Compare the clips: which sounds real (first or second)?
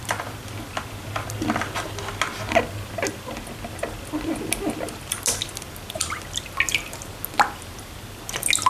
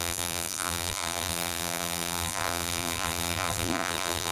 first